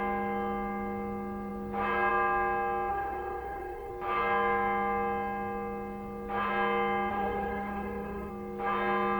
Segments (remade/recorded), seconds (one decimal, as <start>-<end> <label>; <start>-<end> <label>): 0.0-2.9 recorded; 2.9-3.9 remade; 3.9-7.1 recorded; 7.1-8.3 remade; 8.3-9.2 recorded